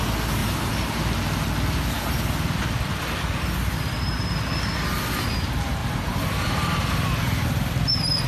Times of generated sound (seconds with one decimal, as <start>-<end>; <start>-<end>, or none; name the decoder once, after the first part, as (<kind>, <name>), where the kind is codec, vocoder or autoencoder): 0.4-1.0 (vocoder, BigVGAN v2); 5.8-6.8